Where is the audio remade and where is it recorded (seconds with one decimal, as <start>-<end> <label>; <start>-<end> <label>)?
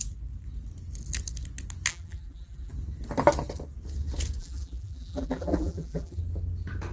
0.0-1.9 recorded; 1.9-2.7 remade; 2.7-4.4 recorded; 4.4-6.2 remade; 6.2-6.9 recorded